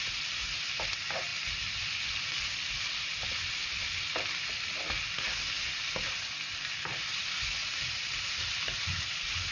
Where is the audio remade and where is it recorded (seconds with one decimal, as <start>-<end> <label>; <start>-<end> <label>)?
0.0-7.6 recorded; 7.6-9.5 remade